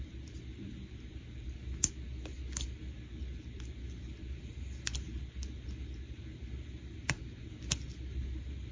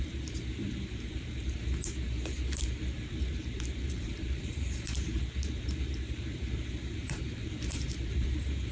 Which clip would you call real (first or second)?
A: first